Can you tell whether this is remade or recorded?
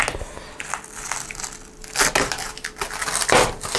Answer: recorded